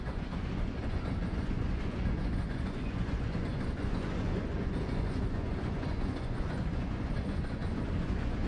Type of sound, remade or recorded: remade